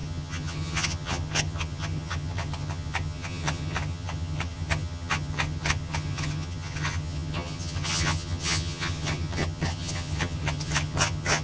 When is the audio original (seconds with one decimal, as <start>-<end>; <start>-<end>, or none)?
none